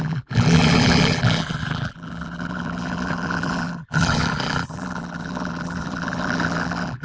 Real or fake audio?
fake